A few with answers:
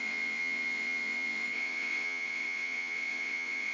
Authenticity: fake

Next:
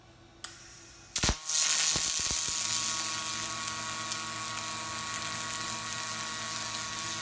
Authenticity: real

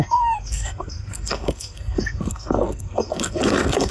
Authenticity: fake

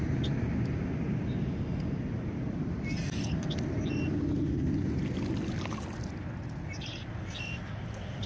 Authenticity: real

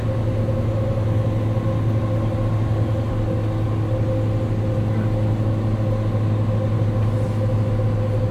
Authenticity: real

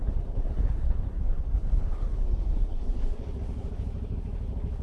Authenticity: fake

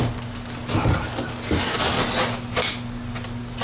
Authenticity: real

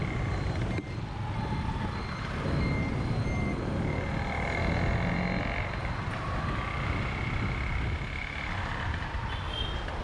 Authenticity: real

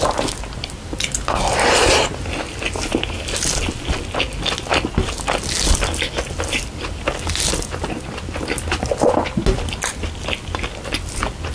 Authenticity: real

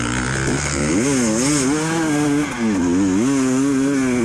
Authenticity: real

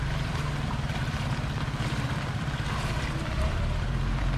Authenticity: fake